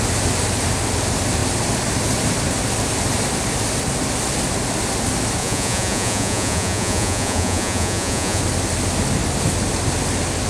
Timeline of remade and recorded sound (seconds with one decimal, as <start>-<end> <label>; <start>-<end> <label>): 0.0-5.4 recorded; 5.4-8.4 remade; 8.4-10.5 recorded